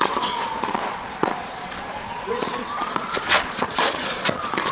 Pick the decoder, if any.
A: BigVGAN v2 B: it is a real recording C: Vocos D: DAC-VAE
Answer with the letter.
C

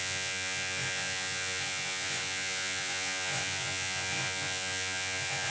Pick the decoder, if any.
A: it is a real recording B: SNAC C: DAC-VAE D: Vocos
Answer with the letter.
D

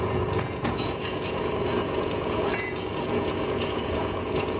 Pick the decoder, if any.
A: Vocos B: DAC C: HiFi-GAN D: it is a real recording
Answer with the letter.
A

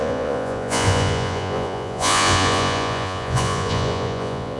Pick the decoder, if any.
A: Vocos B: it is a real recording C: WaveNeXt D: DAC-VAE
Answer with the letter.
A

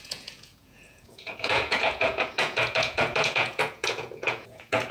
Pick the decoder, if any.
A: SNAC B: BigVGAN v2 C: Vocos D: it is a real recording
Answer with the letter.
C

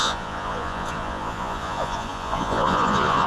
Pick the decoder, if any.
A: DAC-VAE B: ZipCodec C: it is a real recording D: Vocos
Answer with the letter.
D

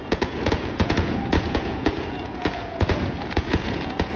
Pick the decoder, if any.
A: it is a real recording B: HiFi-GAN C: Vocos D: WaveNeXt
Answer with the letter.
C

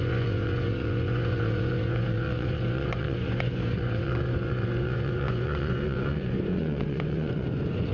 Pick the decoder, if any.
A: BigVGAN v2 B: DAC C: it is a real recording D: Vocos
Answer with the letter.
D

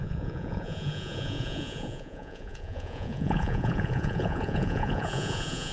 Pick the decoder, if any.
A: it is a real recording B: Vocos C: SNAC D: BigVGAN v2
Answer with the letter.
B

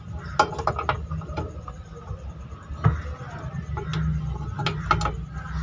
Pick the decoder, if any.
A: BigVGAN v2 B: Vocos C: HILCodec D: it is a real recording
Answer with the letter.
D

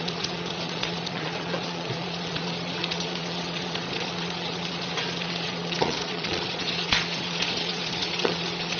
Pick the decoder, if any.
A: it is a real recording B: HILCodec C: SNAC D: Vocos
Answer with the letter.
D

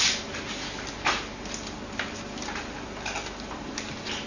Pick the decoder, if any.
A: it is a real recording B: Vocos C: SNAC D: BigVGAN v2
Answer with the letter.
A